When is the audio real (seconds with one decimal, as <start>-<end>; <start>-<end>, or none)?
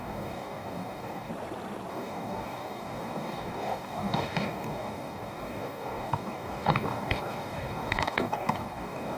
1.3-1.9